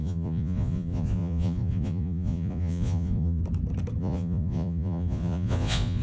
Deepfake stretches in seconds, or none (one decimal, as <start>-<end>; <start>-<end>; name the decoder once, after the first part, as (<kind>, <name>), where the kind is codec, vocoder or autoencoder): 0.0-3.4 (vocoder, Vocos); 4.0-6.0